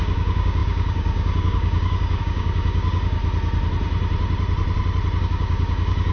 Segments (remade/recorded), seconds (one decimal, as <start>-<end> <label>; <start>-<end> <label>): 0.0-3.2 remade; 3.2-5.2 recorded; 5.2-6.1 remade